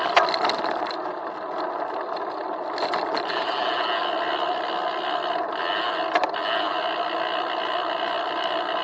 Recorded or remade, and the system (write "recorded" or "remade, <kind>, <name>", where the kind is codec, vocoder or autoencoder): recorded